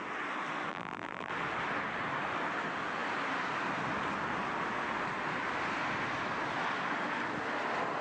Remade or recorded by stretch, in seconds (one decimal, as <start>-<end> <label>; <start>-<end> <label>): 0.0-0.7 recorded; 0.7-1.3 remade; 1.3-8.0 recorded